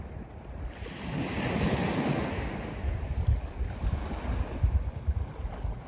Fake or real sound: real